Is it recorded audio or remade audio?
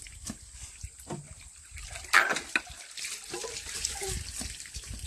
recorded